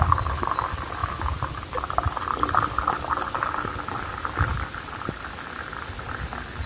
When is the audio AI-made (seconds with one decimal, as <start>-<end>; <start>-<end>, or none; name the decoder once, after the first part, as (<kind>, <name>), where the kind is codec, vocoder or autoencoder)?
1.0-4.1 (vocoder, BigVGAN v2); 4.5-6.7